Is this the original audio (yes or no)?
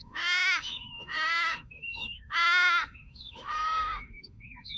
no